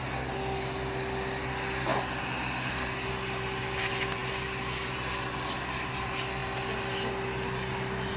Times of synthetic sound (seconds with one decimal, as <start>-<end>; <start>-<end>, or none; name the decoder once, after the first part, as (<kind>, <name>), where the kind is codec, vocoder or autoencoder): none